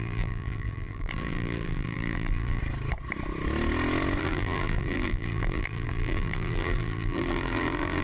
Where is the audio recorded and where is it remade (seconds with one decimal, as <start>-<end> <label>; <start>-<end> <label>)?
0.0-2.6 remade; 2.6-4.2 recorded; 4.2-8.0 remade

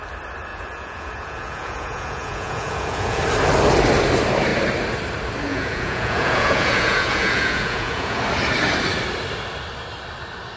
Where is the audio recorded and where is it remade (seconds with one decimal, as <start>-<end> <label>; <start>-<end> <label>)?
0.0-0.5 recorded; 0.5-3.2 remade; 3.2-5.5 recorded; 5.5-8.2 remade; 8.2-10.6 recorded